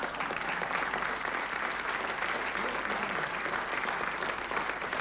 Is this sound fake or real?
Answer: real